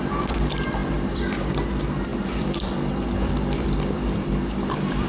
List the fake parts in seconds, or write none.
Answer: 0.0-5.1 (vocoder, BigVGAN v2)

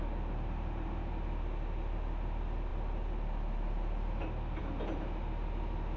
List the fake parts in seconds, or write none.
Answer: none

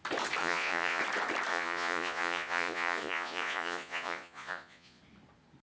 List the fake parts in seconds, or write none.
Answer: 0.4-1.0 (vocoder, Vocos); 1.5-5.0

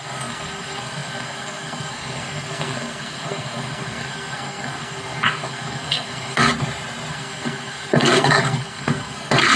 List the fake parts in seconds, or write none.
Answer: 0.0-6.5 (codec, SNAC); 7.1-9.6

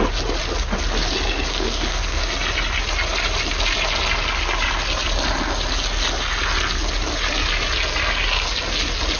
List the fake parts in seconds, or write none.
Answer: 1.5-2.2 (codec, SNAC)

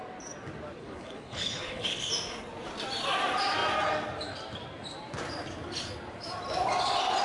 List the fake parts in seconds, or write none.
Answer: 0.8-2.1 (codec, HILCodec)